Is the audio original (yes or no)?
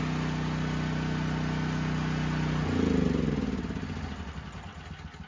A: yes